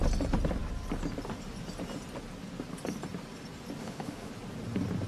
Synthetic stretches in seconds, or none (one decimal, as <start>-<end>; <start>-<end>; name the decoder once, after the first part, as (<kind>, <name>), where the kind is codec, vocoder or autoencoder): 3.8-4.3 (autoencoder, DAC-VAE)